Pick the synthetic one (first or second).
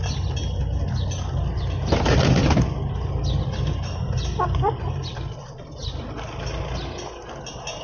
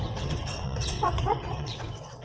second